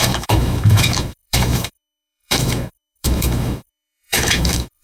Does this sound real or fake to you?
fake